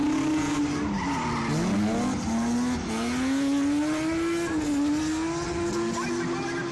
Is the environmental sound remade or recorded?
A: recorded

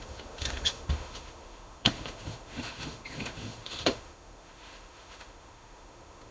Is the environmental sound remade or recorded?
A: remade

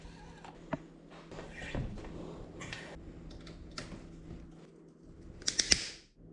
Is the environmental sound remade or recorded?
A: recorded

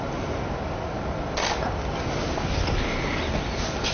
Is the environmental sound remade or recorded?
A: recorded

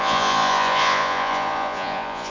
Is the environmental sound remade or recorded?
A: remade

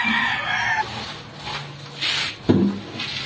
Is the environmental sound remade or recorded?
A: recorded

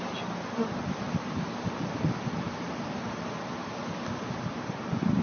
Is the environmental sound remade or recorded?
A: recorded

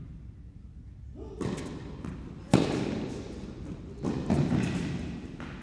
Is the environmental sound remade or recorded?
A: recorded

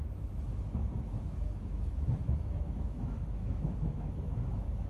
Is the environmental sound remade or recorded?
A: remade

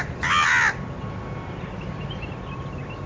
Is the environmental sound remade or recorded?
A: recorded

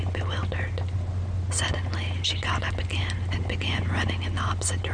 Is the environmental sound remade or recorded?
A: recorded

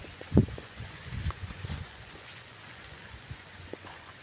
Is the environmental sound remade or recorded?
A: remade